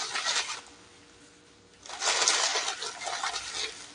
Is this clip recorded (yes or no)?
yes